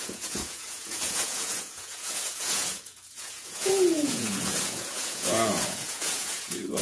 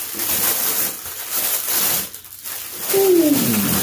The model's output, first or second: first